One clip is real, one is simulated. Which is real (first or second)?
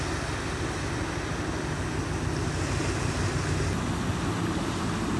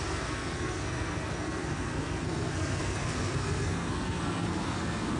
first